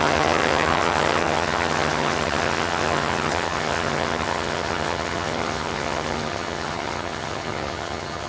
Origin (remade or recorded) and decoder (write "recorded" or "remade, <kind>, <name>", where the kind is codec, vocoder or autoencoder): remade, vocoder, HiFi-GAN